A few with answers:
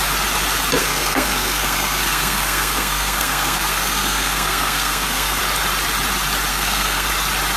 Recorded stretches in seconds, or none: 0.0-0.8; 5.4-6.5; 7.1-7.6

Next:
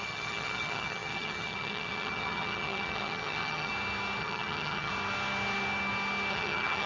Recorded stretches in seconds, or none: 3.7-4.2; 4.9-6.3

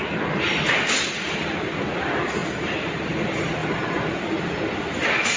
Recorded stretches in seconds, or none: 0.0-2.4; 3.0-5.4

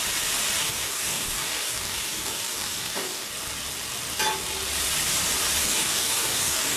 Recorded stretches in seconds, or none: 0.0-0.6; 3.3-5.6

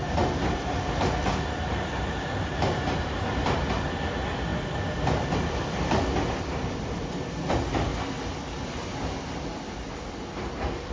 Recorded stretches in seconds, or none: 0.0-1.3; 3.6-10.9